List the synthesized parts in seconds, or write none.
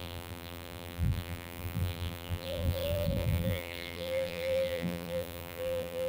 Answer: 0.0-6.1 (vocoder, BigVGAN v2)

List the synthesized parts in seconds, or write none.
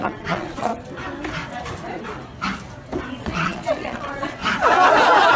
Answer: 0.0-0.7 (vocoder, Vocos); 3.1-4.4